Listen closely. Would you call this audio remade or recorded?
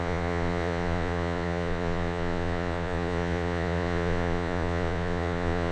remade